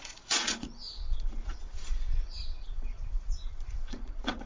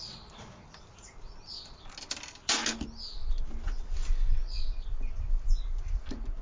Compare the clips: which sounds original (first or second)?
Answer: second